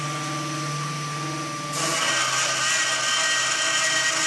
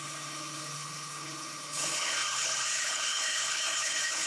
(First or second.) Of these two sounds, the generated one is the second